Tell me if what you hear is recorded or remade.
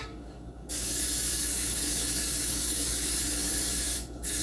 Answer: remade